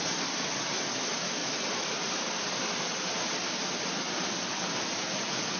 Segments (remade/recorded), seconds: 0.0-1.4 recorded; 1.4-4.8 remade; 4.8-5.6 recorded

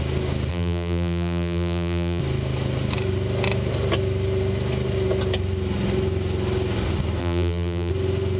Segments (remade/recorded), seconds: 0.0-0.5 recorded; 0.5-2.2 remade; 2.2-7.2 recorded; 7.2-7.9 remade; 7.9-8.4 recorded

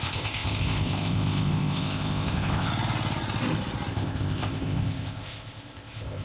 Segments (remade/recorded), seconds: 0.0-2.7 remade; 2.7-3.9 recorded; 3.9-6.2 remade

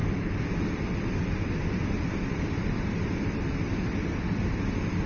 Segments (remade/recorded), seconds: 0.0-5.1 recorded

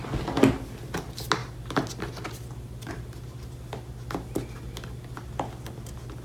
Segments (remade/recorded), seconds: 0.0-6.2 recorded

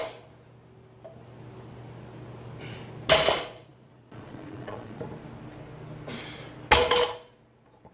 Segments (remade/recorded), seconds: 0.0-3.7 recorded; 3.7-5.0 remade; 5.0-7.9 recorded

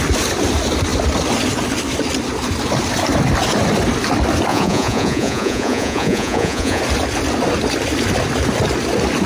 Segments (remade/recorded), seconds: 0.0-4.5 recorded; 4.5-6.8 remade; 6.8-9.3 recorded